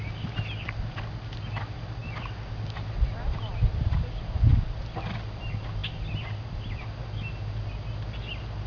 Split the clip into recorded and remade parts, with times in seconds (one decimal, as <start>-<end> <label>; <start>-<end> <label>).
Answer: 0.0-8.7 recorded